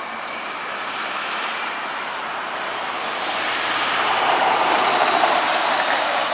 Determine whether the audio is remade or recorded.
remade